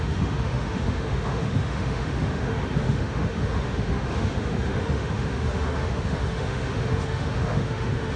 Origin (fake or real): fake